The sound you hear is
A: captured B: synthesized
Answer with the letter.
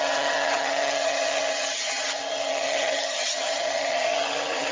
B